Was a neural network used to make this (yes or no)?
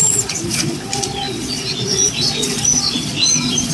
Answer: yes